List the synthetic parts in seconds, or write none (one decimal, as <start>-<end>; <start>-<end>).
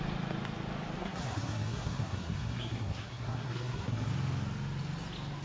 1.0-4.1